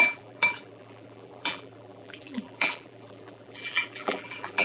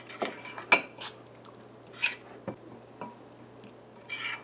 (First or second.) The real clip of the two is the second